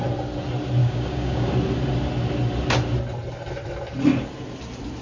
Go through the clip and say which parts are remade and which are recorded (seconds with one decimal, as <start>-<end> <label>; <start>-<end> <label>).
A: 0.0-0.8 recorded; 0.8-1.5 remade; 1.5-5.0 recorded